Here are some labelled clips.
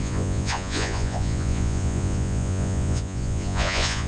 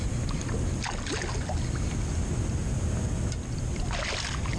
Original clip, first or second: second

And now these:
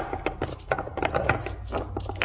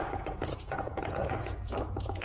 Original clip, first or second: first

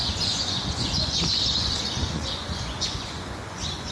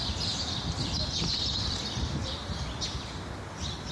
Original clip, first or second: second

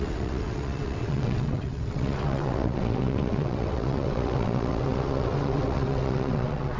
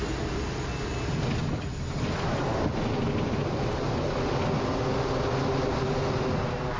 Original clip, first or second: second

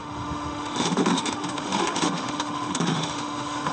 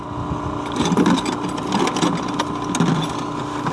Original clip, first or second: second